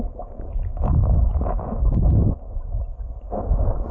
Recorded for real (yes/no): no